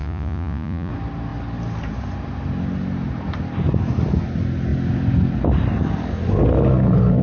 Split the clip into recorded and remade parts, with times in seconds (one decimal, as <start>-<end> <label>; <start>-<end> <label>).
0.0-0.9 remade; 0.9-7.2 recorded